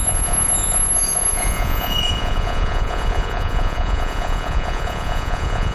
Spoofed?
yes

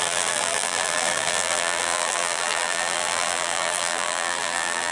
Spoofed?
yes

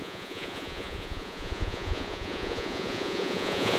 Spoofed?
yes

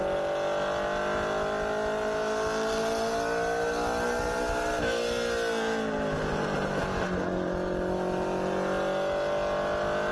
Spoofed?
no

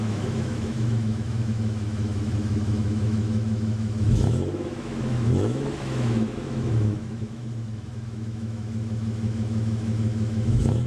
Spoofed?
yes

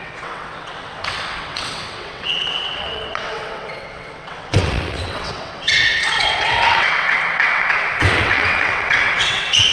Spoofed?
yes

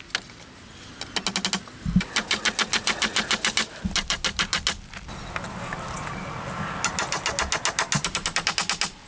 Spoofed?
no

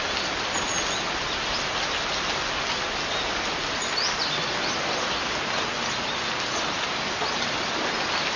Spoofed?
no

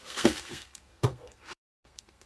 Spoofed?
yes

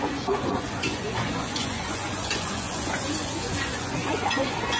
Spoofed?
yes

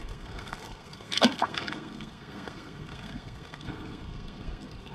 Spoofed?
yes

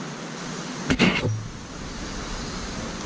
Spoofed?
no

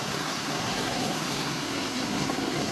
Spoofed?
yes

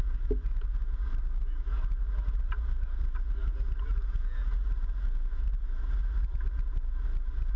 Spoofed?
no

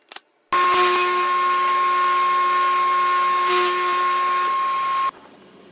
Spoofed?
no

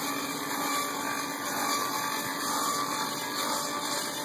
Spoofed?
no